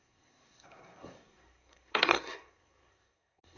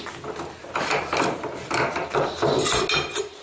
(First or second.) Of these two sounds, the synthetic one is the first